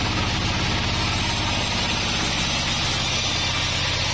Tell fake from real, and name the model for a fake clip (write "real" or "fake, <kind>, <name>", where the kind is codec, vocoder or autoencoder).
real